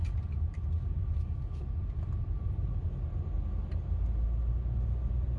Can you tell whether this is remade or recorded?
recorded